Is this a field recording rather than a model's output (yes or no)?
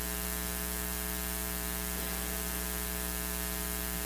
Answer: yes